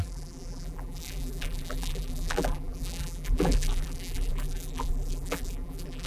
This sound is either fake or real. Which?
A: fake